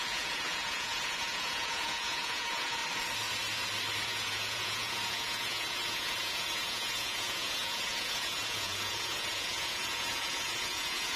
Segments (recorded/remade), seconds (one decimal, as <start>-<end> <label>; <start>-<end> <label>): 0.0-2.8 remade; 2.8-4.0 recorded; 4.0-11.2 remade